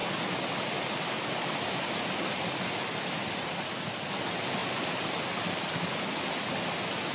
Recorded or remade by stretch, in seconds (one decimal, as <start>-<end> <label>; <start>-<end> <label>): 0.0-4.6 recorded; 4.6-5.9 remade; 5.9-7.1 recorded